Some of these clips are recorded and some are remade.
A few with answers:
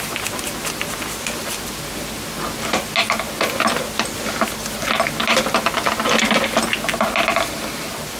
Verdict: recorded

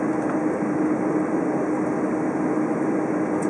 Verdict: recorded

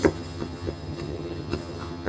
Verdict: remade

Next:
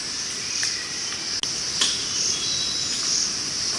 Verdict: recorded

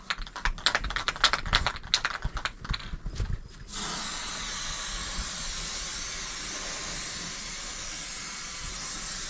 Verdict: recorded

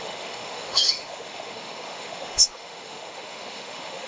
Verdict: remade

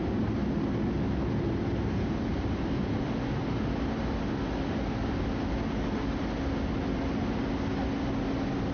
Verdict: recorded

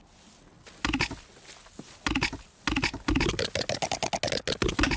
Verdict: recorded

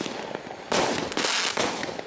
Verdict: recorded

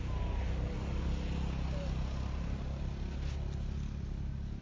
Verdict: recorded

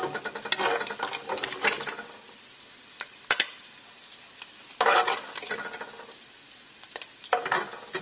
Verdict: recorded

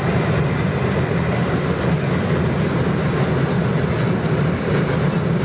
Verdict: recorded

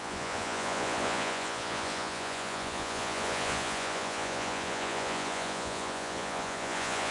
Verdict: remade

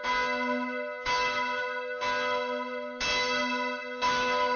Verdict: recorded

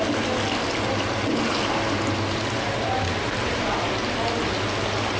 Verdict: recorded